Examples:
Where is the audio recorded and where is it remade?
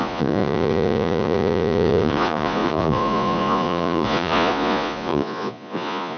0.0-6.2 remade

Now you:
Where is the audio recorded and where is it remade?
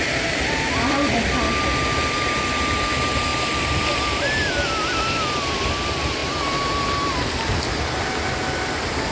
0.0-3.3 recorded; 3.3-4.5 remade; 4.5-9.1 recorded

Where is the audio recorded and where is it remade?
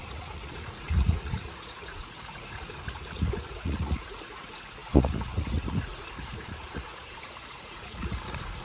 0.0-8.6 remade